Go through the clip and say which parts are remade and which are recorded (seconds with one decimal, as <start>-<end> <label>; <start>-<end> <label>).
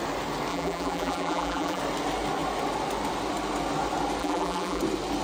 0.0-0.5 recorded; 0.5-1.8 remade; 1.8-4.2 recorded; 4.2-4.8 remade; 4.8-5.2 recorded